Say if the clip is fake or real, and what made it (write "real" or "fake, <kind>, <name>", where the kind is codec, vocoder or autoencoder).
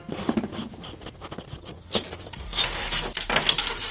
real